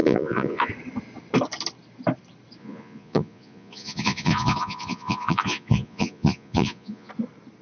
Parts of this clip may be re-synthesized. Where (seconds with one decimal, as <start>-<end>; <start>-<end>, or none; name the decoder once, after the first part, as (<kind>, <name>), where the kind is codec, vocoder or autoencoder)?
0.0-0.7 (vocoder, Vocos); 2.6-7.1